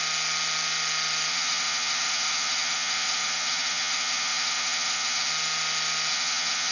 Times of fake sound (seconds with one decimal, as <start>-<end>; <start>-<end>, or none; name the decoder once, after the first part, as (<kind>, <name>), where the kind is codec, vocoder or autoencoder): 1.3-5.3 (vocoder, HiFi-GAN); 6.1-6.7